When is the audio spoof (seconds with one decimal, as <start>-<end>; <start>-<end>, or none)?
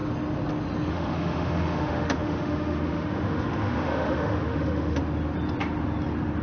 0.9-5.0